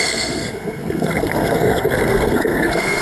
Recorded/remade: remade